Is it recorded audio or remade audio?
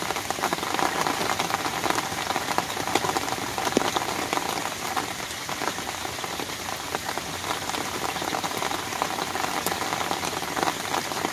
remade